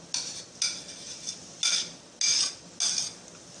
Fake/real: real